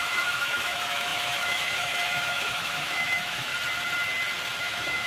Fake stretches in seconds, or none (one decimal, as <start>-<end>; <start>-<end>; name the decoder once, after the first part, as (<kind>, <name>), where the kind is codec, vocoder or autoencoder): 0.0-3.5 (autoencoder, DAC-VAE); 4.6-5.1